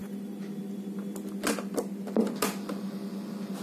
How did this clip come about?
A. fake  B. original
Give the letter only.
B